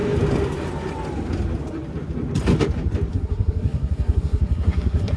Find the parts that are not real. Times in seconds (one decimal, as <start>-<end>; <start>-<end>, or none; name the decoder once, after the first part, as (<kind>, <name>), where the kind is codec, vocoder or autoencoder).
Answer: 3.1-5.2 (codec, SNAC)